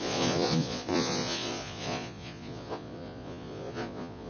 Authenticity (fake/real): fake